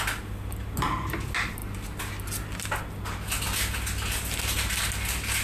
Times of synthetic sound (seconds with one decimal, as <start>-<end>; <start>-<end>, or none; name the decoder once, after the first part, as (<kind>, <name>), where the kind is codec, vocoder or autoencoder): none